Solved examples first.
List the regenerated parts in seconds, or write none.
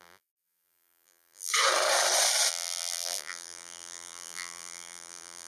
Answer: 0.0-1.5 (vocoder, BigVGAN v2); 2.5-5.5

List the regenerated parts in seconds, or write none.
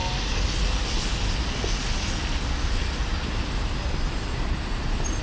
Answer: none